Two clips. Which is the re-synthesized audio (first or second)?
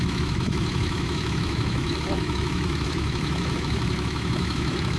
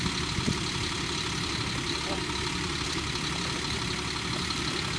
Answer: first